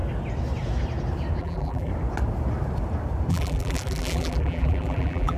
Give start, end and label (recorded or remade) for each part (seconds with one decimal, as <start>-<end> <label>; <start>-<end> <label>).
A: 0.0-1.4 recorded; 1.4-1.9 remade; 1.9-3.3 recorded; 3.3-5.4 remade